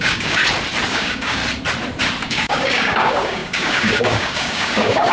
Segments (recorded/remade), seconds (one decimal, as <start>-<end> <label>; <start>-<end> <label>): 0.0-0.4 remade; 0.4-0.9 recorded; 0.9-1.4 remade; 1.4-2.2 recorded; 2.2-5.1 remade